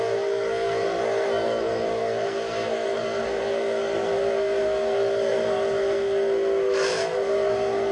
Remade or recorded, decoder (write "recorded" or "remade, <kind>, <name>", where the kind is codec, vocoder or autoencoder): remade, codec, SNAC